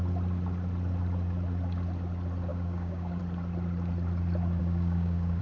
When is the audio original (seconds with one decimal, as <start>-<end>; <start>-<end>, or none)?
0.0-2.5; 3.2-4.6